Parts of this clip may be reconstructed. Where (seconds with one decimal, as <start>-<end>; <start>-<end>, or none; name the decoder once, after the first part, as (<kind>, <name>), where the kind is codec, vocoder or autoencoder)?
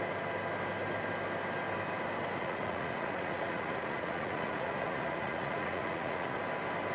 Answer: 2.4-6.4 (vocoder, Vocos)